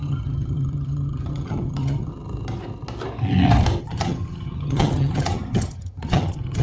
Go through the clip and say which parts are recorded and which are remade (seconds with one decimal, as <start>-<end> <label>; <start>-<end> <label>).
0.0-2.1 remade; 2.1-3.8 recorded; 3.8-6.6 remade